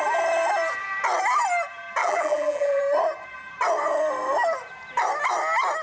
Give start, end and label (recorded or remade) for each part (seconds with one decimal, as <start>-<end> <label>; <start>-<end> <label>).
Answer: 0.0-2.0 recorded; 2.0-2.8 remade; 2.8-5.8 recorded